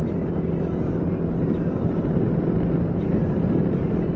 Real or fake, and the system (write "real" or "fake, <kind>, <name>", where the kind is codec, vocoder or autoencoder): real